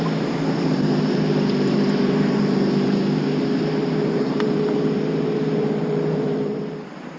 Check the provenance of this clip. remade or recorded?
remade